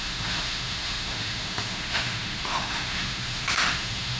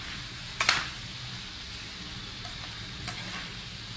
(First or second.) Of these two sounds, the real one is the second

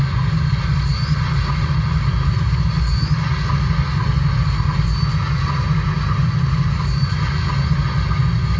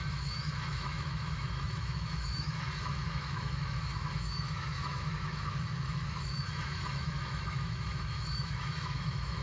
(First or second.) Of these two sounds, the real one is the first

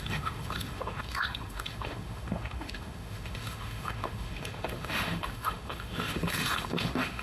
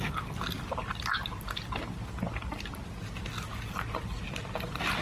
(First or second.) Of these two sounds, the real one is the second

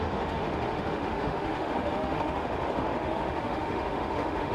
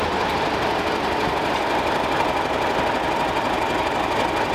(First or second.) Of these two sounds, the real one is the second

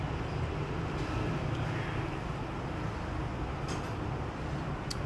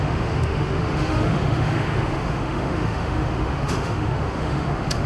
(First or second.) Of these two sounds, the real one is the first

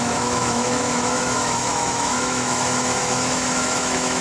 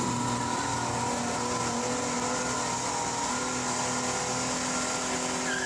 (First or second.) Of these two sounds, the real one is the second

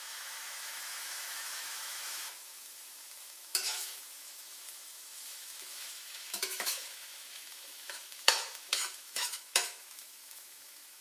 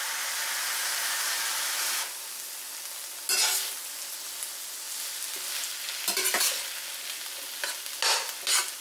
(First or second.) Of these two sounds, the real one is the second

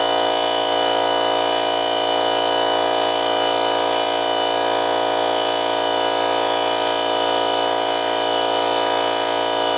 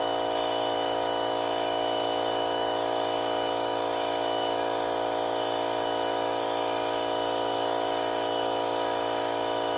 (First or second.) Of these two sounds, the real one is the first